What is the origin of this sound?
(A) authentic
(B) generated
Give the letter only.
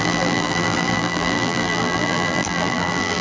B